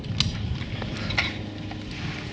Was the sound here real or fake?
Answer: real